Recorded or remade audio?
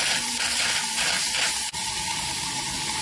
recorded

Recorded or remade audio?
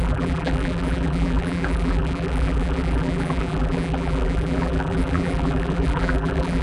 remade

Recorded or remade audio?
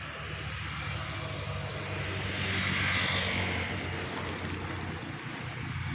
recorded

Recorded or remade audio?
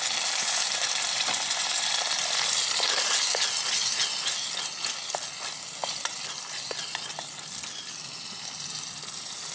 recorded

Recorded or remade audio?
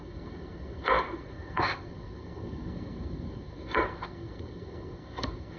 remade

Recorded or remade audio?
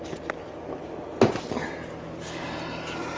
recorded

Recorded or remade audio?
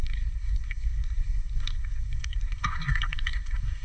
remade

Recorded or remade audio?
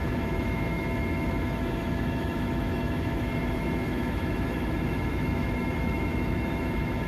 remade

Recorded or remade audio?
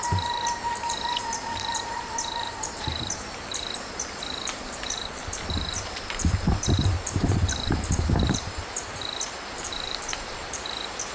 remade